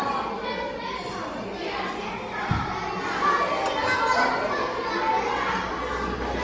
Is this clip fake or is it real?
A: real